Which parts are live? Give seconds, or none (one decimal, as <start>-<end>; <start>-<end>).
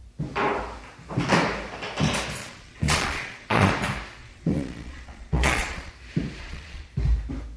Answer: 0.0-2.4; 3.7-4.2; 5.9-6.4; 6.9-7.6